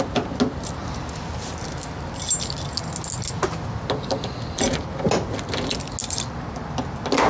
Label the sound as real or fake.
real